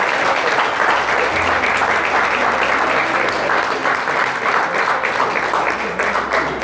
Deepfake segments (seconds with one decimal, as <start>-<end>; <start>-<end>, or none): none

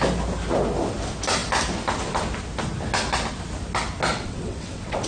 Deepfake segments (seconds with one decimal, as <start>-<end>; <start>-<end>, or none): 4.1-5.1

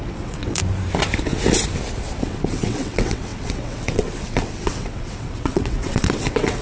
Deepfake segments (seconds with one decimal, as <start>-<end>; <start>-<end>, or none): 0.0-0.6; 2.2-6.6